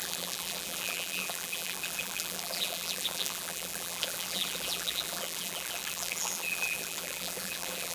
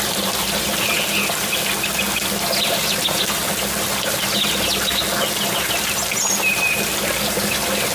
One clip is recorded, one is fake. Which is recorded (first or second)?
second